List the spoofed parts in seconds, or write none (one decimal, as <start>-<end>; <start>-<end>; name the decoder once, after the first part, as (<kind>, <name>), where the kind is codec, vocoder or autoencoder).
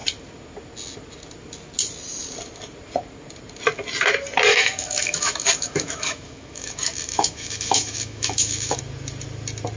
4.5-8.8 (autoencoder, DAC-VAE)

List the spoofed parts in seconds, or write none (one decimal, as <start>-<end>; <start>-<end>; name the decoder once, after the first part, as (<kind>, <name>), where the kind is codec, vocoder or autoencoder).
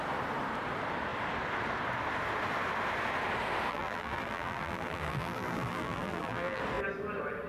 3.7-6.6 (vocoder, BigVGAN v2)